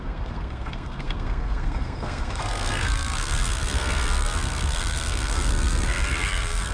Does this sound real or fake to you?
fake